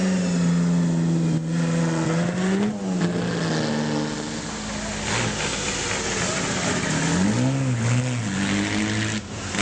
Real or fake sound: real